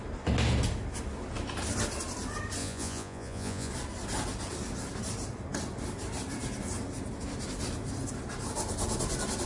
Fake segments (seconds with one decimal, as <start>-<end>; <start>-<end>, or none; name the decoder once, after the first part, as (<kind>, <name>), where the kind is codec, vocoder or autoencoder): 2.6-3.7 (vocoder, Vocos)

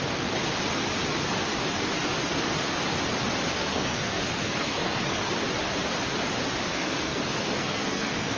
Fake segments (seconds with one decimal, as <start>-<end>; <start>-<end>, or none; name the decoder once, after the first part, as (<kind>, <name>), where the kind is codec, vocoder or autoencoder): 3.6-5.3 (codec, SNAC); 6.7-8.4

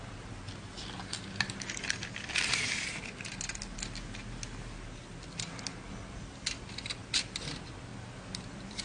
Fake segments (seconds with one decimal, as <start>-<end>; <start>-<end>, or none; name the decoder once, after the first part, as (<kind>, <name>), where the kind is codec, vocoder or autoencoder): none

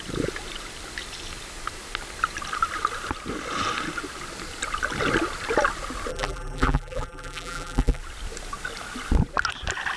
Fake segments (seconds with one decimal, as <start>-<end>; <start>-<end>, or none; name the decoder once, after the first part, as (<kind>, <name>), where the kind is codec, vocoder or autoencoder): 6.1-8.0 (vocoder, BigVGAN v2)